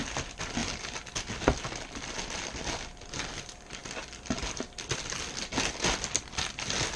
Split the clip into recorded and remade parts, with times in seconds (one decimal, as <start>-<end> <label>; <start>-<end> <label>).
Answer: 0.0-7.0 recorded